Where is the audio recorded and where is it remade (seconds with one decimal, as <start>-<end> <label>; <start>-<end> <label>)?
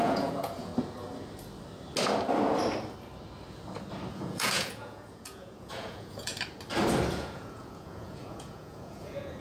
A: 0.0-0.7 remade; 0.7-4.1 recorded; 4.1-6.3 remade; 6.3-7.1 recorded; 7.1-9.4 remade